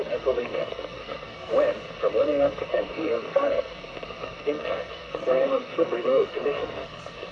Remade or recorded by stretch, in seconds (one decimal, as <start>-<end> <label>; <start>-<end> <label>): 0.0-1.5 remade; 1.5-2.1 recorded; 2.1-7.3 remade